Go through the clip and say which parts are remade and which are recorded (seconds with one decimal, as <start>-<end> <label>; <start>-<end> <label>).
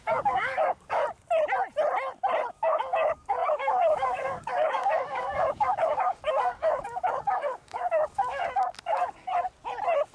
0.0-1.0 remade; 1.0-2.5 recorded; 2.5-9.3 remade; 9.3-10.1 recorded